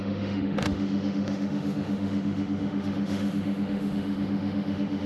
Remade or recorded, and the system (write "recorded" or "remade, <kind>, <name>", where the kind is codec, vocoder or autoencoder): remade, autoencoder, DAC-VAE